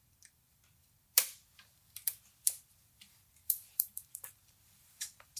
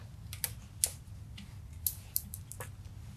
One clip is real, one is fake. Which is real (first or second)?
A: second